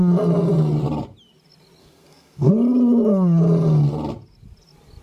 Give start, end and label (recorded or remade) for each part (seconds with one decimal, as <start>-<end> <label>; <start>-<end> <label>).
0.0-1.8 recorded; 1.8-2.5 remade; 2.5-5.0 recorded